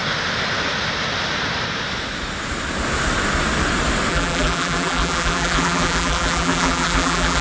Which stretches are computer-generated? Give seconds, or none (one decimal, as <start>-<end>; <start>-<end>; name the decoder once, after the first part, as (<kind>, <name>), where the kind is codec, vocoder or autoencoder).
4.1-7.4 (vocoder, BigVGAN v2)